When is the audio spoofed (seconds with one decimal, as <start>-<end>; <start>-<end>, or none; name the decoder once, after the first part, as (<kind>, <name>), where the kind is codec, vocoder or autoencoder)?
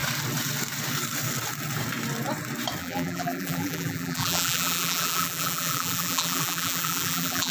2.8-7.5 (vocoder, BigVGAN v2)